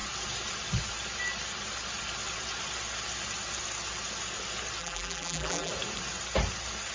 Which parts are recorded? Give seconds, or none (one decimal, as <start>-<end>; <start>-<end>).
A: 0.0-4.8; 5.7-6.9